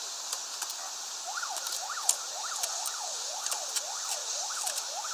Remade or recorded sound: recorded